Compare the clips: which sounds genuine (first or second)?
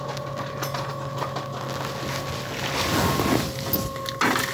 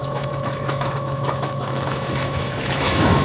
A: first